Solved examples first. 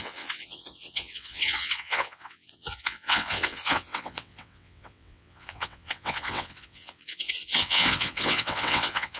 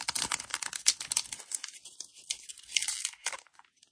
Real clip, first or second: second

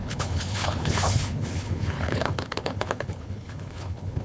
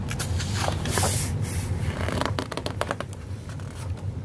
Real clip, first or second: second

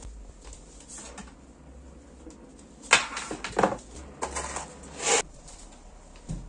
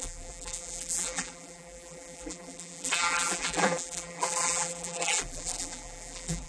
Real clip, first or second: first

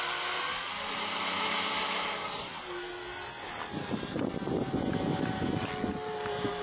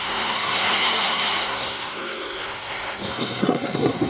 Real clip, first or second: first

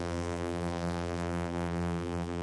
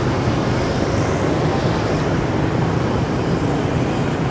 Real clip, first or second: second